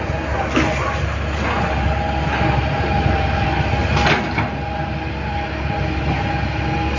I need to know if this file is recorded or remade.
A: recorded